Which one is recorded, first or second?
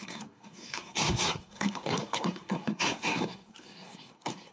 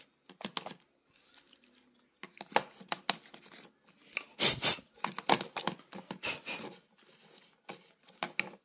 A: second